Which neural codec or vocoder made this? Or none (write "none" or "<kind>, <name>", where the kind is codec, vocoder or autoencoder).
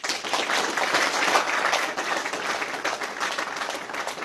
none